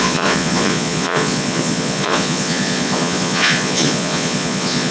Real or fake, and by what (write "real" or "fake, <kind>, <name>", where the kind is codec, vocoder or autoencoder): fake, vocoder, Vocos